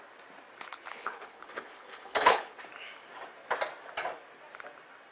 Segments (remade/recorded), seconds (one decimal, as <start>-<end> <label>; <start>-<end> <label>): 0.0-1.0 recorded; 1.0-2.6 remade; 2.6-5.1 recorded